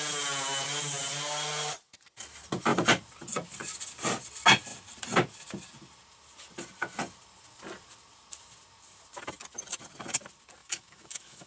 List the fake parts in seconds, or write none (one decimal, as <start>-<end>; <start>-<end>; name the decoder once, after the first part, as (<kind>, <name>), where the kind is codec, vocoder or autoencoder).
10.6-11.5 (autoencoder, DAC-VAE)